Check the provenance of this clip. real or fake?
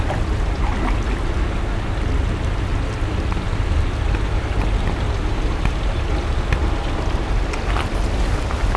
real